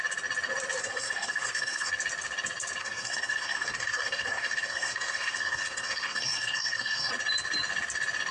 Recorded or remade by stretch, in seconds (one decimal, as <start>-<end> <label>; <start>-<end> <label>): 0.0-0.8 recorded; 0.8-1.9 remade; 1.9-2.8 recorded; 2.8-7.1 remade; 7.1-8.3 recorded